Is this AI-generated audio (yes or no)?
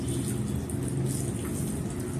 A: no